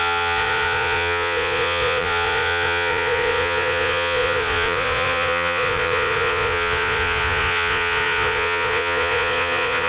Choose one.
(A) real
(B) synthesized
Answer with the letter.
B